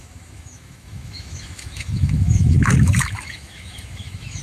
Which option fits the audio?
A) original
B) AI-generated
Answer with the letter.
B